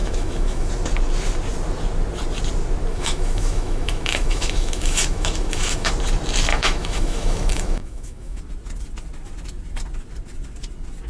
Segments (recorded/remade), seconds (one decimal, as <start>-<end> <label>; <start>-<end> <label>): 0.0-0.7 remade; 0.7-2.9 recorded; 2.9-5.9 remade; 5.9-6.5 recorded; 6.5-8.4 remade; 8.4-11.1 recorded